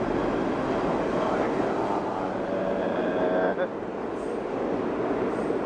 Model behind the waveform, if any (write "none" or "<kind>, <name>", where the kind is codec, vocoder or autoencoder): none